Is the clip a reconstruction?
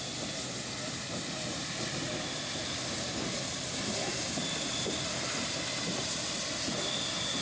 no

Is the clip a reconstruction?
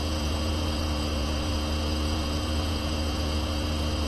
yes